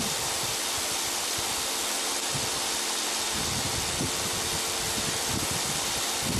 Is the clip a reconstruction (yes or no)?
no